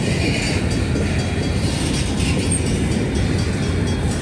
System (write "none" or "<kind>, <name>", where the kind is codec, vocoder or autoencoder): none